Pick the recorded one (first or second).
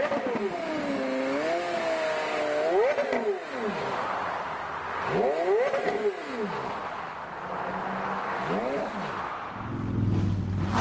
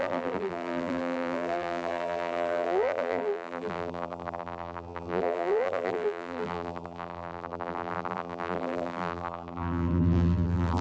first